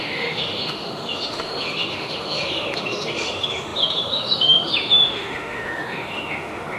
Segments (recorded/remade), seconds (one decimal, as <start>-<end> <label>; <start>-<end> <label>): 0.0-6.8 remade